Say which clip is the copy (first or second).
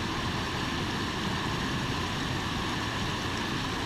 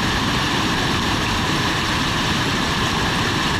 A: second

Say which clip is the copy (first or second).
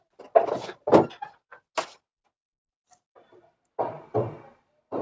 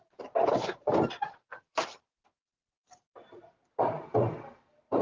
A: second